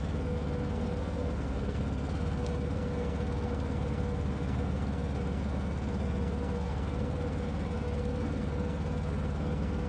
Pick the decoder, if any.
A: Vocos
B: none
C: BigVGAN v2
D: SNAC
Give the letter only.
D